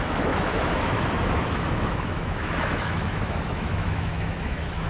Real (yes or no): no